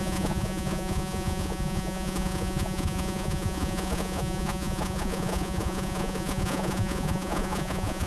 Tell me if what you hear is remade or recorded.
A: remade